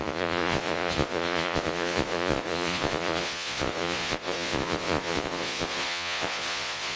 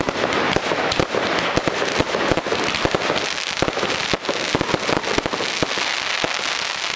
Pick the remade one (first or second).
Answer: first